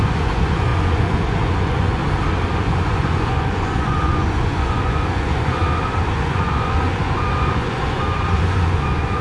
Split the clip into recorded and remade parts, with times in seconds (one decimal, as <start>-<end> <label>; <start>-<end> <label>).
0.0-2.0 remade; 2.0-2.6 recorded; 2.6-5.6 remade; 5.6-6.1 recorded; 6.1-9.2 remade